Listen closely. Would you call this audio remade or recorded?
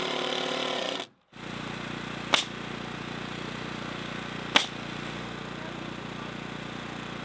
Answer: recorded